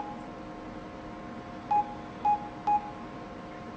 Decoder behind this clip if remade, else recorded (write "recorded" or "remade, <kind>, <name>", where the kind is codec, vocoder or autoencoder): recorded